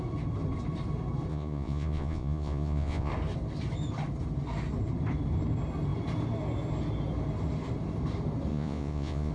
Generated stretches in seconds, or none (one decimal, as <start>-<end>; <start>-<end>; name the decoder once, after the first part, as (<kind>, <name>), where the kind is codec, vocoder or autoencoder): 1.3-3.1 (vocoder, Vocos); 8.5-9.3